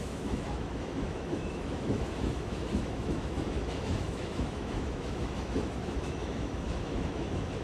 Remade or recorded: remade